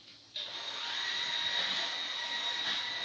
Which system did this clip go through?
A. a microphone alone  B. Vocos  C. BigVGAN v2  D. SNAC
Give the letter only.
A